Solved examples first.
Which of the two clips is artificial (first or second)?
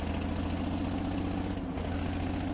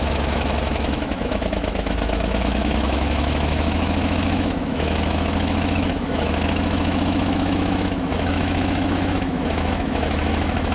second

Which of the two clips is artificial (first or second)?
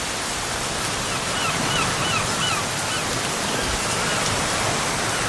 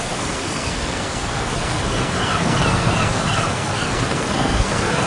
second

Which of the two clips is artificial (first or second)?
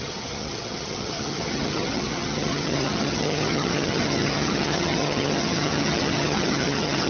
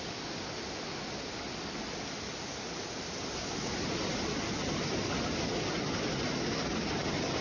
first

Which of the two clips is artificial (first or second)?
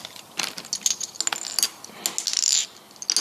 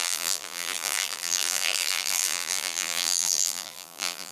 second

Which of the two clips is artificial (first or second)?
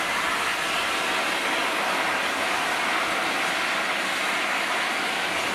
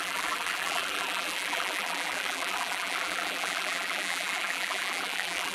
second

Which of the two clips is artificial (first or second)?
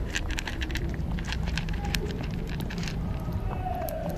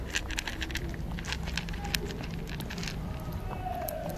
first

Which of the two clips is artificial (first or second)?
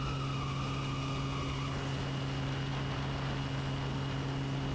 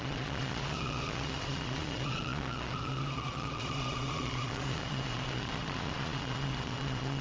second